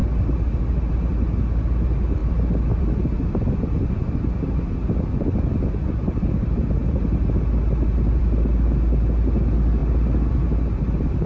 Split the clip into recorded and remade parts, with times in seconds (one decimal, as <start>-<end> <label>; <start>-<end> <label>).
0.0-11.3 recorded